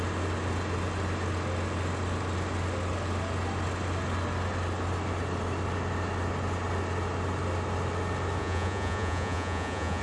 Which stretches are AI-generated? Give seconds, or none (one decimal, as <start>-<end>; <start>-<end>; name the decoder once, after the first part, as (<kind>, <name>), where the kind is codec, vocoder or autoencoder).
8.4-10.0 (vocoder, Vocos)